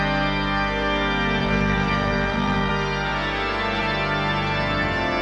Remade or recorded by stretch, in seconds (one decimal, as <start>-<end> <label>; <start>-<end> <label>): 0.0-1.4 recorded; 1.4-2.7 remade; 2.7-5.2 recorded

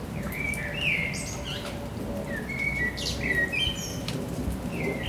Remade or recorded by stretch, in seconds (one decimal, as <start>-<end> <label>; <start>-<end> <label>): 0.0-0.6 remade; 0.6-3.7 recorded; 3.7-5.1 remade

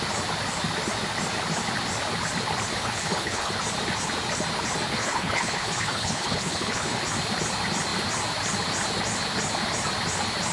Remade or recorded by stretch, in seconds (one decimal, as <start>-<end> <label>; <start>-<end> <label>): 0.0-2.8 recorded; 2.8-3.5 remade; 3.5-5.0 recorded; 5.0-7.0 remade; 7.0-10.5 recorded

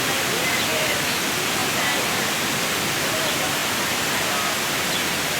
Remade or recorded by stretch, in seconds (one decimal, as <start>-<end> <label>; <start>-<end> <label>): 0.0-0.7 recorded; 0.7-1.2 remade; 1.2-5.4 recorded

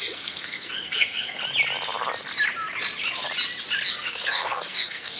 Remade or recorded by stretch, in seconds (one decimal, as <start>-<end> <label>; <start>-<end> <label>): 0.0-1.4 remade; 1.4-3.9 recorded; 3.9-5.2 remade

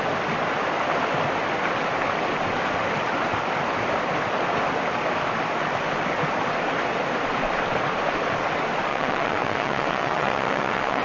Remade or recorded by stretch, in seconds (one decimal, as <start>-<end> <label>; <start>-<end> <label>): 0.0-8.9 recorded; 8.9-11.0 remade